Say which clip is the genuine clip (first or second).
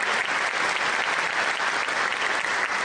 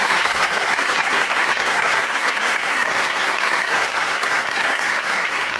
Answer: first